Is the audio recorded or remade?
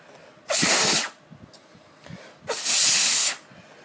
recorded